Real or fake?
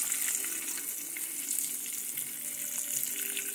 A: real